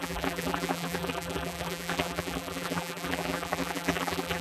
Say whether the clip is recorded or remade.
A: remade